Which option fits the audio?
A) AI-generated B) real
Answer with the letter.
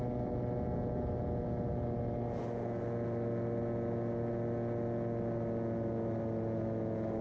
B